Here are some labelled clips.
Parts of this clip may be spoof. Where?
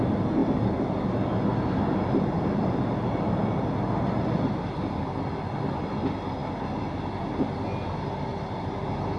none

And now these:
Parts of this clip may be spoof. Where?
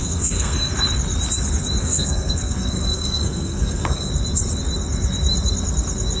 0.0-0.7 (codec, SNAC); 1.8-4.1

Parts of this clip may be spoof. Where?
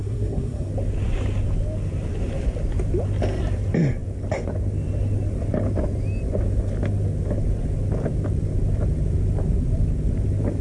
0.0-0.7 (codec, SNAC)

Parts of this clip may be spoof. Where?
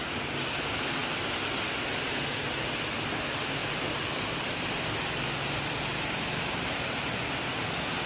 none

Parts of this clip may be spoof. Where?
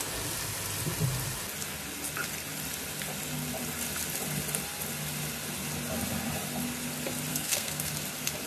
7.3-7.9 (codec, SNAC)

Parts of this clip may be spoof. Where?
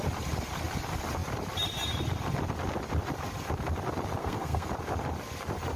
4.2-4.7 (codec, SNAC)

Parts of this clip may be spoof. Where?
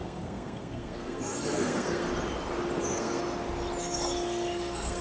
0.0-2.1 (codec, SNAC); 2.8-3.2; 3.8-5.0